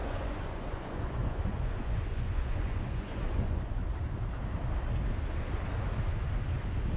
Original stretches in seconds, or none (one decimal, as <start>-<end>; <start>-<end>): 3.8-7.0